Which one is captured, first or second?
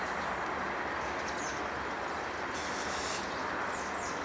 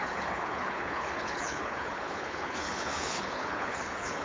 first